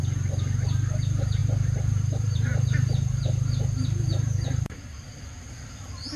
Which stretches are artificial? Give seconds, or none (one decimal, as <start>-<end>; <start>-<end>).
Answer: 1.4-5.1